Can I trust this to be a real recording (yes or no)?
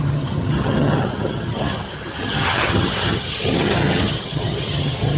no